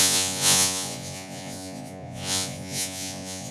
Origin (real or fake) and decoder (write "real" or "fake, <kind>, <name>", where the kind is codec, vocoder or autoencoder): fake, vocoder, Vocos